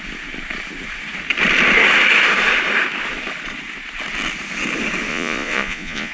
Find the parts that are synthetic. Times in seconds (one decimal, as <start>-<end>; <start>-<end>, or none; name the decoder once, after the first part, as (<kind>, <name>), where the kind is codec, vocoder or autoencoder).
5.1-6.1 (vocoder, Vocos)